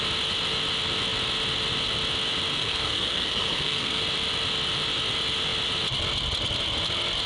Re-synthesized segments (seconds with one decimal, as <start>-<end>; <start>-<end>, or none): 2.5-4.0